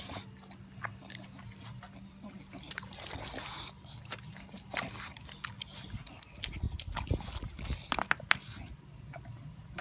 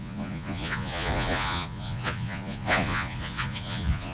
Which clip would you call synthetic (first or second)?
second